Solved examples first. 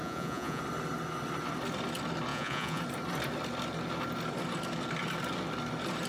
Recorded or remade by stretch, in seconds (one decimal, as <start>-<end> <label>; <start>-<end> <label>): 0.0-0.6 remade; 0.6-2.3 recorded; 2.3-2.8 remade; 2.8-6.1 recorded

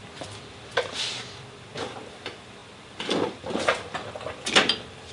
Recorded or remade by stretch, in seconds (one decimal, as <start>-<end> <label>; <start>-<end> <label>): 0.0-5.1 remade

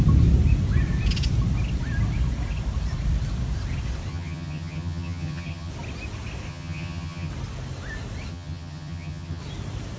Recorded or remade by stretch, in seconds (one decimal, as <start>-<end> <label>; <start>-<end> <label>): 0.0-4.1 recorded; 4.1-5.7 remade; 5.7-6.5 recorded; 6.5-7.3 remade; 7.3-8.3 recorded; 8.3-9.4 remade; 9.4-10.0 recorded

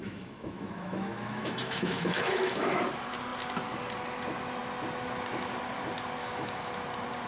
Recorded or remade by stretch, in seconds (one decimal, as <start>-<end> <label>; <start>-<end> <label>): 0.0-2.8 remade; 2.8-6.2 recorded; 6.2-6.7 remade; 6.7-7.3 recorded